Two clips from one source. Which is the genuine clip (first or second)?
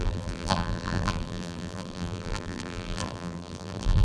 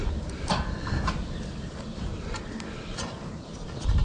second